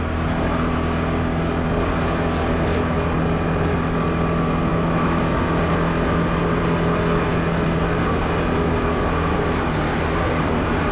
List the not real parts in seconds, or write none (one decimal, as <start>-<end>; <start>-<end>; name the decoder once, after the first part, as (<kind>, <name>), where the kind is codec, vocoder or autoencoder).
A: 4.7-5.4 (autoencoder, DAC-VAE)